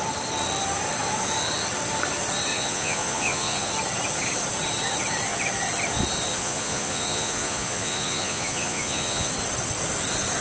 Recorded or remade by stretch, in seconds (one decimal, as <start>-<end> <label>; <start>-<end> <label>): 0.0-2.5 recorded; 2.5-3.7 remade; 3.7-6.3 recorded; 6.3-9.3 remade; 9.3-10.4 recorded